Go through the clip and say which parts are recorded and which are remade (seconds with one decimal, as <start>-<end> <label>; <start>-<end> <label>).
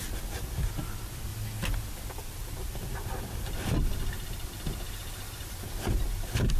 0.0-1.3 remade; 1.3-2.1 recorded; 2.1-5.0 remade; 5.0-6.0 recorded; 6.0-6.6 remade